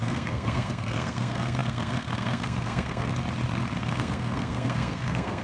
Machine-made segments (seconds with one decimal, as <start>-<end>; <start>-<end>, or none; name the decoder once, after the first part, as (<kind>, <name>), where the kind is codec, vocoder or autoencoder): 0.0-3.1 (codec, SNAC); 3.8-5.4